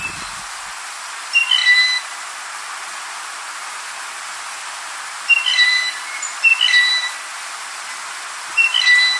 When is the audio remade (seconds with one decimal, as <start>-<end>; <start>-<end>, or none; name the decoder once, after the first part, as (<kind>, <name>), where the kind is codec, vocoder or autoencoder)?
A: none